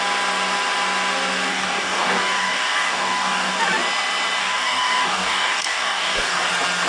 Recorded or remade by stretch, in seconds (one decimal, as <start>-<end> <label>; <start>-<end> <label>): 0.0-1.5 recorded; 1.5-3.5 remade; 3.5-4.4 recorded; 4.4-6.5 remade; 6.5-6.9 recorded